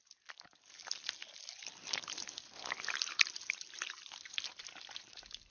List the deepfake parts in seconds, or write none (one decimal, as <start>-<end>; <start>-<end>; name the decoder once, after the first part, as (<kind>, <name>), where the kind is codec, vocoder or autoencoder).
none